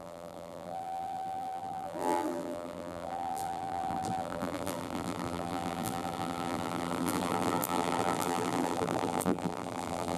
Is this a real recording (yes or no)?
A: no